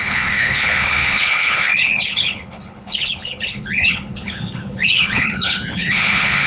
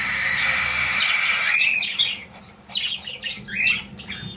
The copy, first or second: first